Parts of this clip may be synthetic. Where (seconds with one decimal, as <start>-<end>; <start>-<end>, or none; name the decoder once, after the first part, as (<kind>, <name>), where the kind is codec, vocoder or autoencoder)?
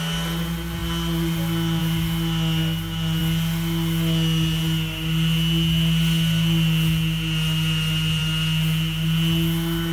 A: none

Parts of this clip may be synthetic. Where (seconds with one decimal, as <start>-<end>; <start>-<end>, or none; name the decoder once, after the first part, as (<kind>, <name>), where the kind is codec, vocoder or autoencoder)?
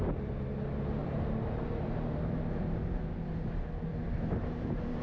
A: 1.0-3.4 (vocoder, BigVGAN v2); 3.9-5.0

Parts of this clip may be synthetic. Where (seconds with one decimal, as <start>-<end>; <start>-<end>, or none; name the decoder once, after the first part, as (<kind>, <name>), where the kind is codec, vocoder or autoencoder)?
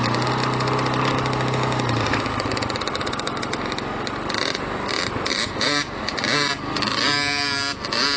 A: 5.3-6.0 (vocoder, BigVGAN v2)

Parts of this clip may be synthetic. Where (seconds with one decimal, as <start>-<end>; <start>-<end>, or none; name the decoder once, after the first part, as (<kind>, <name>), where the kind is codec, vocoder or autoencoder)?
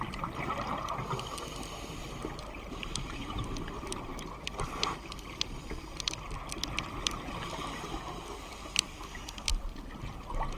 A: 0.0-10.6 (vocoder, BigVGAN v2)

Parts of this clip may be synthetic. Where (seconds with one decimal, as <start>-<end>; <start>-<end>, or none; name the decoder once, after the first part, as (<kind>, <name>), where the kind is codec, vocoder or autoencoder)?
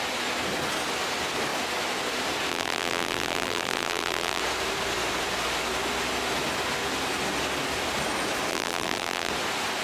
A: 2.5-4.4 (vocoder, BigVGAN v2); 8.5-9.3